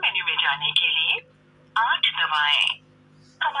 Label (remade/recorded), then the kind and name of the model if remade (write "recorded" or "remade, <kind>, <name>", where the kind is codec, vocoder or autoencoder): recorded